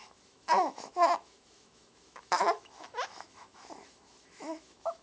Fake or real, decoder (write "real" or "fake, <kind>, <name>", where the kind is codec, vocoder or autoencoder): fake, autoencoder, DAC-VAE